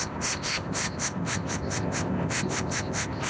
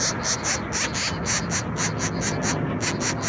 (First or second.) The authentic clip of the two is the second